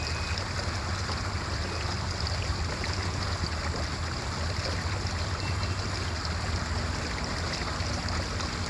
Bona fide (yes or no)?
yes